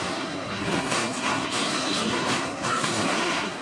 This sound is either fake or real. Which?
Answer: fake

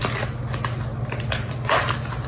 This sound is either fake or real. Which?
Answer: real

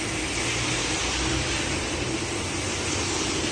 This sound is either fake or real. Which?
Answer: real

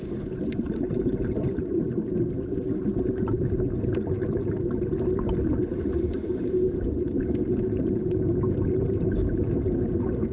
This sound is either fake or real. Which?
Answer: real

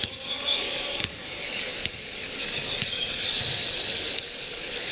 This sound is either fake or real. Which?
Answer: fake